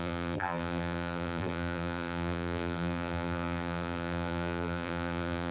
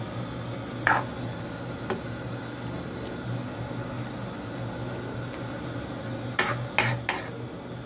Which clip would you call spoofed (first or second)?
first